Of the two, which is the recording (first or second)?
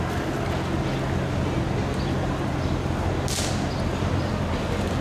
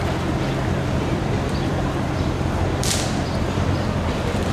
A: first